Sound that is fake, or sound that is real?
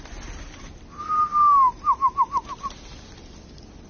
real